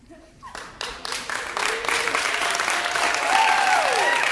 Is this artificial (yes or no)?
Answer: yes